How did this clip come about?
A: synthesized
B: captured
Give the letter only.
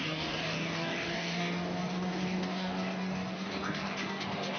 A